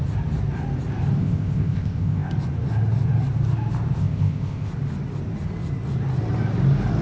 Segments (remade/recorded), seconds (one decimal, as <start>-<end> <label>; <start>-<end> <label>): 0.0-1.2 recorded; 1.2-2.3 remade; 2.3-4.0 recorded; 4.0-4.7 remade; 4.7-7.0 recorded